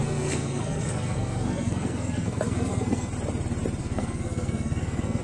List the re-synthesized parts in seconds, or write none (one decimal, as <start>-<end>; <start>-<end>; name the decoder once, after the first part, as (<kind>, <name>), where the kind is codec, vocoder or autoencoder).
0.0-3.1 (codec, SNAC); 3.8-5.2